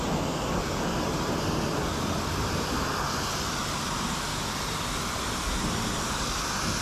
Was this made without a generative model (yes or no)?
yes